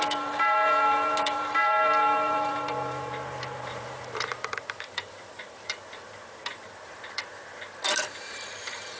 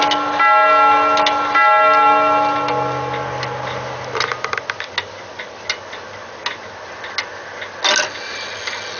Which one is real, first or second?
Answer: second